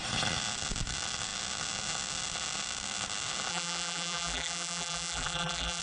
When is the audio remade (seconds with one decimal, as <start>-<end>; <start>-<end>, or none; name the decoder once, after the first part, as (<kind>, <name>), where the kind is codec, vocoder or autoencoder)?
3.5-5.8 (vocoder, BigVGAN v2)